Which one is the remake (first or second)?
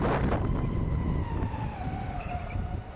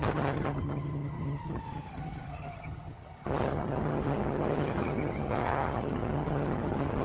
second